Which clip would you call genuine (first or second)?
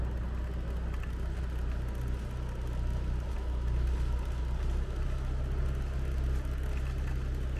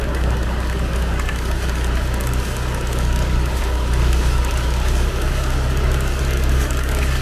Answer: first